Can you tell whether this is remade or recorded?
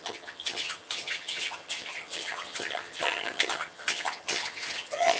remade